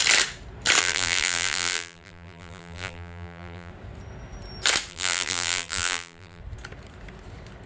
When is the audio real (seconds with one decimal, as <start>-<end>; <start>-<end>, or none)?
0.0-0.8; 3.7-4.9; 6.4-7.7